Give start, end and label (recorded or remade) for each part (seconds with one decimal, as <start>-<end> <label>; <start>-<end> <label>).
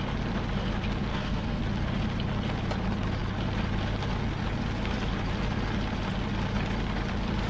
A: 0.0-1.1 recorded; 1.1-1.6 remade; 1.6-7.5 recorded